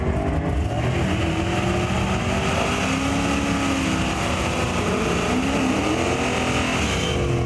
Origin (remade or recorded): recorded